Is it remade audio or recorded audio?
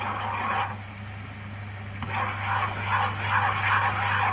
recorded